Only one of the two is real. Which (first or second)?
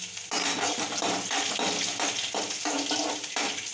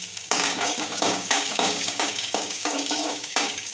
first